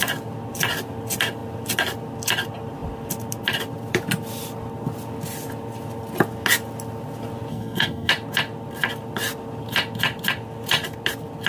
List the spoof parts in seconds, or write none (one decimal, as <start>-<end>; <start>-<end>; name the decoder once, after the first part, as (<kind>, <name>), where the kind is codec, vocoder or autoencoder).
7.5-8.1 (codec, SNAC)